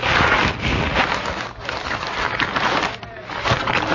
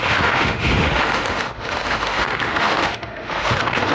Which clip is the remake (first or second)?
second